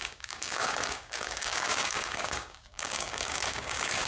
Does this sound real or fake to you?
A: fake